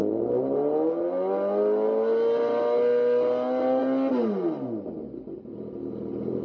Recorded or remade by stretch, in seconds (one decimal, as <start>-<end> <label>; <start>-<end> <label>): 0.0-6.4 recorded